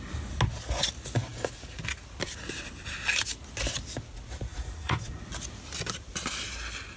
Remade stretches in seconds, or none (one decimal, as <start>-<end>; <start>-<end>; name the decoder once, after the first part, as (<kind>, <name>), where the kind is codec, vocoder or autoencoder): 4.5-5.2 (vocoder, Vocos)